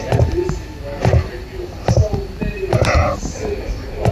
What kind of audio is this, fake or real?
real